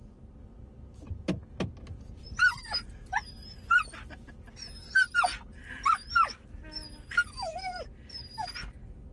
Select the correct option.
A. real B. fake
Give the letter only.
A